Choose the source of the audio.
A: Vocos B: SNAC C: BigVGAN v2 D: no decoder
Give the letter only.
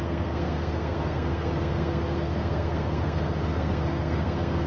B